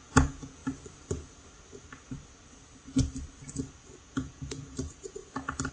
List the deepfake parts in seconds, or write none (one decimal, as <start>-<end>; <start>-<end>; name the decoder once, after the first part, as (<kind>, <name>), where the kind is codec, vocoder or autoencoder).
0.0-0.6 (vocoder, Vocos); 4.0-5.2